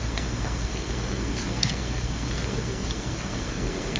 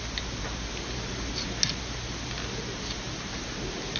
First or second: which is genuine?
second